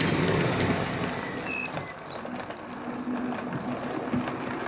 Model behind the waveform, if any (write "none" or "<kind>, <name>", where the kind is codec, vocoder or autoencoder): none